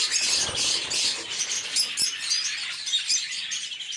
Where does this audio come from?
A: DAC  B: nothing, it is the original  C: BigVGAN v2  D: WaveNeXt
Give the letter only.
B